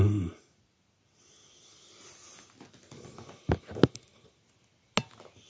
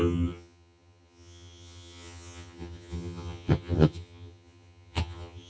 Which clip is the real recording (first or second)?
first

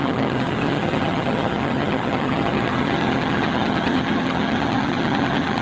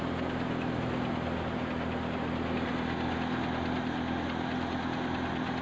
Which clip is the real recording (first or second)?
second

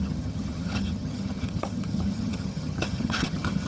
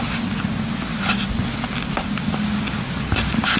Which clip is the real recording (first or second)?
second